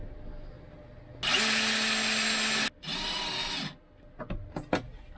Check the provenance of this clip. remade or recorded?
recorded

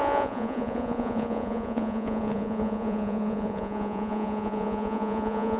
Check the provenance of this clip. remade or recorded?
remade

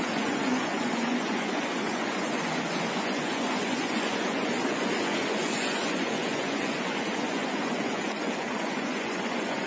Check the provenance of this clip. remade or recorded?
remade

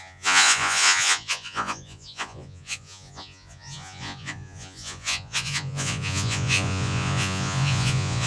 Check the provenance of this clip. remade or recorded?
remade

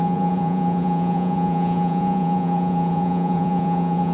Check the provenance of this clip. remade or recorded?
remade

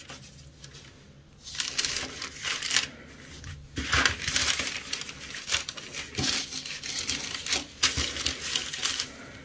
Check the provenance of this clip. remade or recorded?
recorded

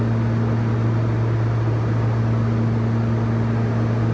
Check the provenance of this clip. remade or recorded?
recorded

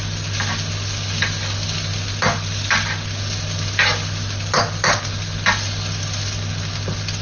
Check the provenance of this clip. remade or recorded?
recorded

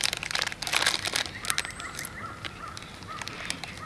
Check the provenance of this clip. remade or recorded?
recorded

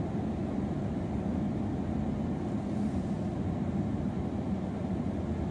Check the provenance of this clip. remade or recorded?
recorded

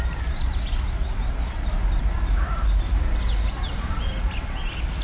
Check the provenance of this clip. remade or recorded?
recorded